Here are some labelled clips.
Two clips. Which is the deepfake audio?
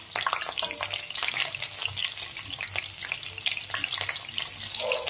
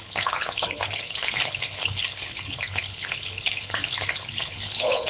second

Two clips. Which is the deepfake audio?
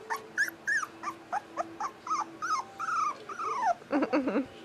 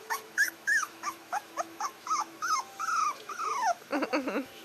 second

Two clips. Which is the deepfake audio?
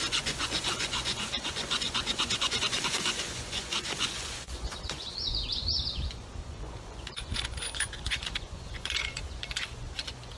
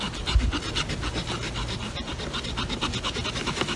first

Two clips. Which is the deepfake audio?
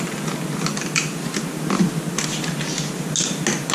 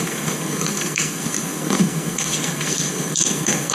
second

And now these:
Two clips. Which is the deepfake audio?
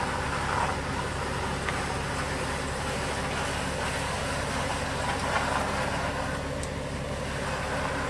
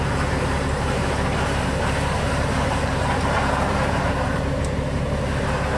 second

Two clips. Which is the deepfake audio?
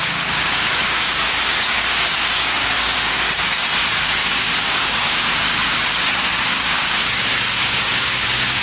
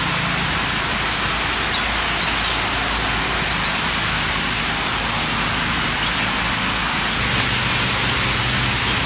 first